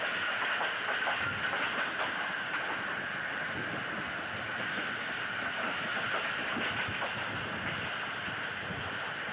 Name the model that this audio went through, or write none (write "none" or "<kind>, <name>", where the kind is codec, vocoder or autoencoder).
none